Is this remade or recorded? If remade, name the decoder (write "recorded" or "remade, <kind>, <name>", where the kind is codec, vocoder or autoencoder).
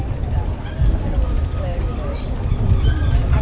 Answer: recorded